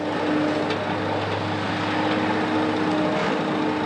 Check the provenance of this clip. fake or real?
real